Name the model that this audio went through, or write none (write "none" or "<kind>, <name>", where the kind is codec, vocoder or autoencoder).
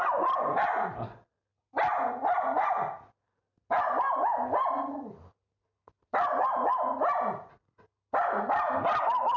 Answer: none